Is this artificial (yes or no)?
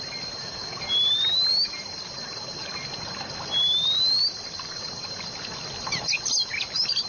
no